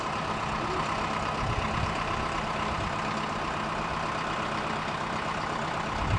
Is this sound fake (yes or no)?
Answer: no